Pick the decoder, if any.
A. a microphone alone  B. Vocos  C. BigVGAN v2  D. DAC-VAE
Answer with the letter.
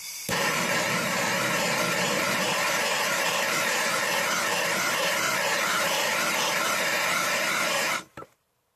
C